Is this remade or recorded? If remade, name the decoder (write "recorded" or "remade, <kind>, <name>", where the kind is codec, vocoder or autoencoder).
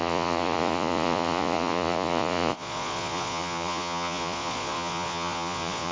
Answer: remade, vocoder, Vocos